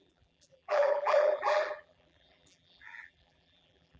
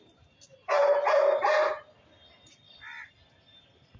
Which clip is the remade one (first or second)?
first